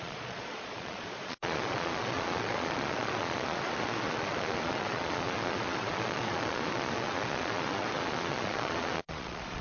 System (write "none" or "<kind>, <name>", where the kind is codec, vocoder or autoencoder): vocoder, Vocos